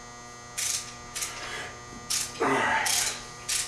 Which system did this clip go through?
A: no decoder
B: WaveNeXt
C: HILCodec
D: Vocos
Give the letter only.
A